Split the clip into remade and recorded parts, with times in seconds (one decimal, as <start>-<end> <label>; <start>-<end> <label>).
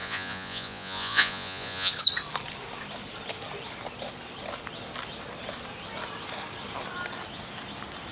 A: 0.0-1.9 remade; 1.9-8.1 recorded